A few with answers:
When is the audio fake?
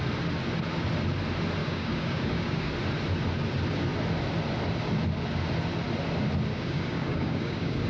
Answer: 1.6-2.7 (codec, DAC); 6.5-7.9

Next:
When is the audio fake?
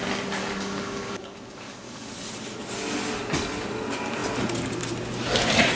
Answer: 0.4-2.1 (codec, DAC)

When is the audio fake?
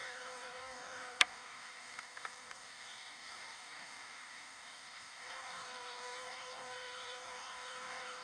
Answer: 0.0-8.2 (codec, DAC)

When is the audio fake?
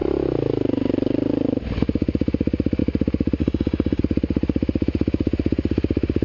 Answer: 3.4-4.0 (codec, DAC)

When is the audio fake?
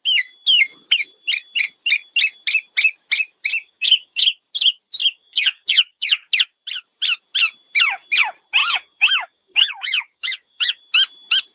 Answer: 3.6-4.4 (codec, DAC); 5.0-6.3; 8.6-10.8